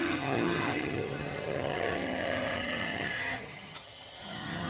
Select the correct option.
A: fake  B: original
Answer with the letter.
A